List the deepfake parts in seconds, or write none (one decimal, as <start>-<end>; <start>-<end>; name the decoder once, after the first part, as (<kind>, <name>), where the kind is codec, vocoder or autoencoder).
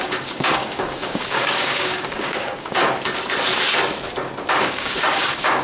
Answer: 0.0-2.8 (codec, DAC); 4.6-5.6